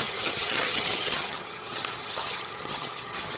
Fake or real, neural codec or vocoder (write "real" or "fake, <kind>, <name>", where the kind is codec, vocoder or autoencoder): fake, vocoder, HiFi-GAN